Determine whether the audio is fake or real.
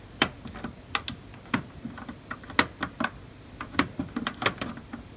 real